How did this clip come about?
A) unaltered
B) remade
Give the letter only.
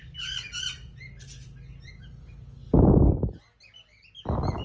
A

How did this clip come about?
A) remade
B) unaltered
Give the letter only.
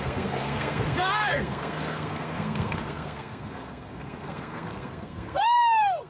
A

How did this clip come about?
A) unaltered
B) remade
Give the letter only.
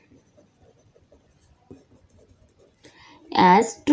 B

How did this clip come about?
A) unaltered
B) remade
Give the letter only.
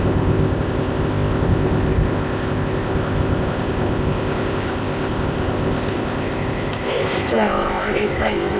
B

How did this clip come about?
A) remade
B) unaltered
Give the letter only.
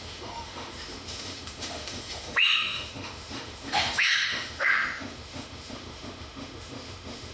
A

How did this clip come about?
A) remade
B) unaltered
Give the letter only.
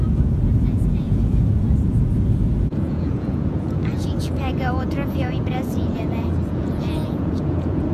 A